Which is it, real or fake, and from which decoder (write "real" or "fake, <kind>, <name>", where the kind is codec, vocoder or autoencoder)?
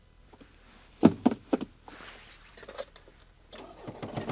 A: real